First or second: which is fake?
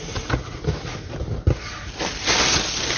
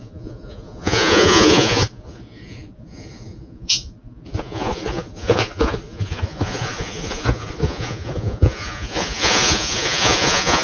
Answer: second